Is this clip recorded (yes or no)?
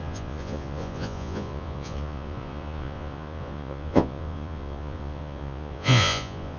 no